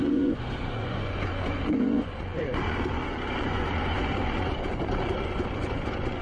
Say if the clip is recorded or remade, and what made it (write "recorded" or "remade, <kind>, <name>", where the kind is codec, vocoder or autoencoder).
remade, vocoder, Vocos